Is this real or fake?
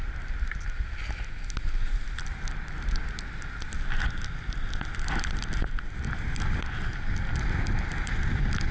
real